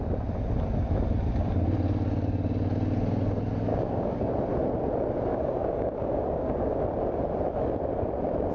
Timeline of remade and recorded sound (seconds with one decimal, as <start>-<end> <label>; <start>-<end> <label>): 0.0-3.7 recorded; 3.7-4.3 remade; 4.3-5.3 recorded; 5.3-6.8 remade; 6.8-8.5 recorded